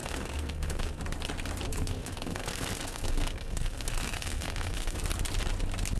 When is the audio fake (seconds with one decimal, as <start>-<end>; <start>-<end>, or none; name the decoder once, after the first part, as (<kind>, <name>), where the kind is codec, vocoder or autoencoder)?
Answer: 0.0-1.0 (codec, SNAC); 1.7-5.0